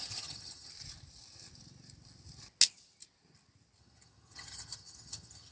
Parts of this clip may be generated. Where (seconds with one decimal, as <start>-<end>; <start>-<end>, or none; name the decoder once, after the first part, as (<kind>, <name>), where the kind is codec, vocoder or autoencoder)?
0.0-0.7 (vocoder, HiFi-GAN); 3.8-5.5